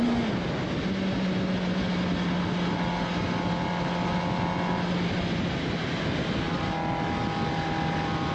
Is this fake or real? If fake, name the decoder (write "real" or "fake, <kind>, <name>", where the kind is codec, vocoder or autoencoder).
real